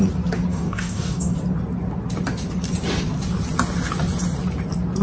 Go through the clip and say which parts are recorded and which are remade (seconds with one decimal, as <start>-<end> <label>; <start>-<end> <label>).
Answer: 0.0-0.5 recorded; 0.5-1.3 remade; 1.3-5.0 recorded